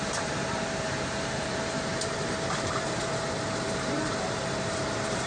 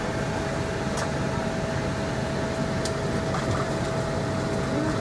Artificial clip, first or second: first